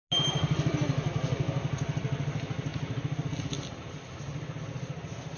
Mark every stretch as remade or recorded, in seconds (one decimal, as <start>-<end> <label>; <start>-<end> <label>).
0.0-5.4 recorded

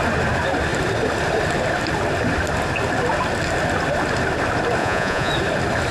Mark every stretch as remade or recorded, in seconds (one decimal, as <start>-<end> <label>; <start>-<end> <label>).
0.0-4.8 recorded; 4.8-5.3 remade; 5.3-5.9 recorded

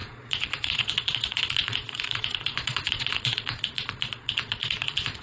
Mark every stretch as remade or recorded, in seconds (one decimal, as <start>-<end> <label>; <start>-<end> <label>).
0.0-5.2 remade

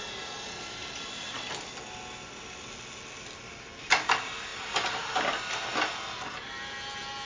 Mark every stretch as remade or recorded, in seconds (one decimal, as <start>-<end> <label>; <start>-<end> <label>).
0.0-7.3 recorded

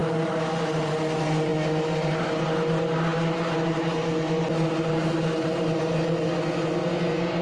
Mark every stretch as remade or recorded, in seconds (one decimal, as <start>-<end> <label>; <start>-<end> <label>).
0.0-7.4 recorded

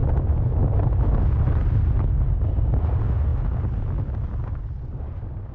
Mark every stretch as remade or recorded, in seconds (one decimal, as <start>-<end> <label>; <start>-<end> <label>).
0.0-5.5 recorded

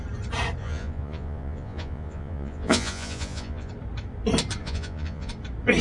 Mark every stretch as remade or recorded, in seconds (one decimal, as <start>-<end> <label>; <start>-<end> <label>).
0.0-0.6 recorded; 0.6-3.7 remade; 3.7-4.6 recorded; 4.6-5.3 remade; 5.3-5.8 recorded

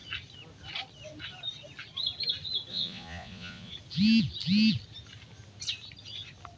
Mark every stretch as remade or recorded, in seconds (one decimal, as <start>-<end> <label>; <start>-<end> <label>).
0.0-2.7 recorded; 2.7-3.7 remade; 3.7-6.6 recorded